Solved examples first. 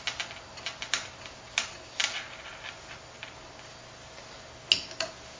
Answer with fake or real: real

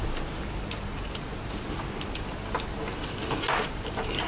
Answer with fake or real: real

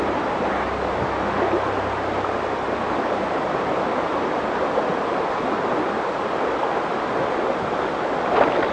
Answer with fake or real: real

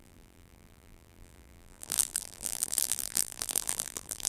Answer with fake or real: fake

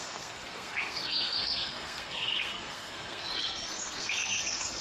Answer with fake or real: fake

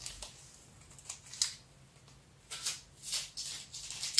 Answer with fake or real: real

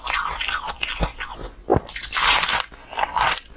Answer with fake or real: real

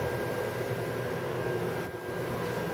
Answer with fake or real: real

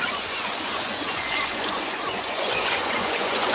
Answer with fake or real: fake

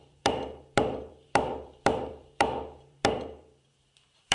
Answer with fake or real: fake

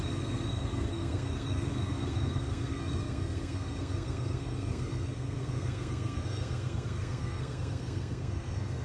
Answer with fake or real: fake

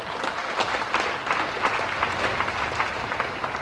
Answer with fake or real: real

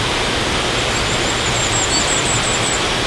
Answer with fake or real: real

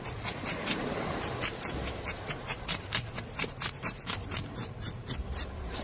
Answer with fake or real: fake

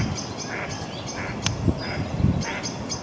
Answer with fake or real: real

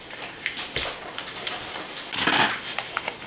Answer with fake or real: real